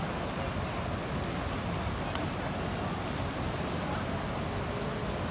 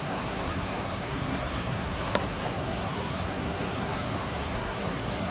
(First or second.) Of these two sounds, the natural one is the first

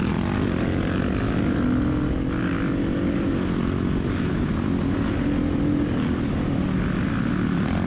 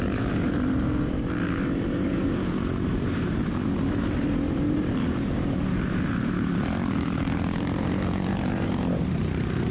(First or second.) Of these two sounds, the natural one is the first